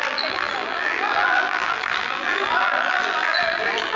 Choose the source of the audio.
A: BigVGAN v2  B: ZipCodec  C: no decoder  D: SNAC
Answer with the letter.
A